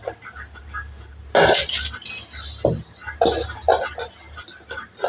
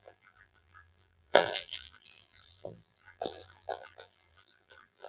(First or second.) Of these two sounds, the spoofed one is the second